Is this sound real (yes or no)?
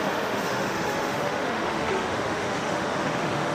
no